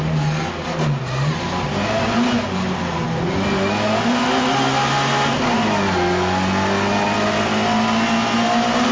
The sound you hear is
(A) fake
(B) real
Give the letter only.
B